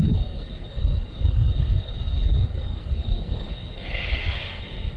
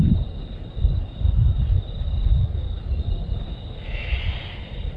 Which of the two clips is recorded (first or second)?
second